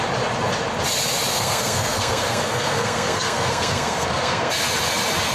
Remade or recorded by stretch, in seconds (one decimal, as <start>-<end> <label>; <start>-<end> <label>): 0.0-1.3 recorded; 1.3-4.5 remade; 4.5-5.3 recorded